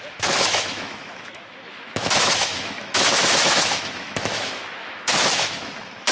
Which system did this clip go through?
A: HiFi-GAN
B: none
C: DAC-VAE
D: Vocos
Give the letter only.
C